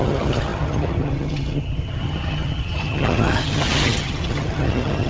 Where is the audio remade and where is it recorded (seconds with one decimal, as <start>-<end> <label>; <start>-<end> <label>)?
0.0-5.1 remade